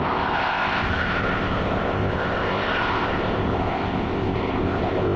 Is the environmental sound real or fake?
fake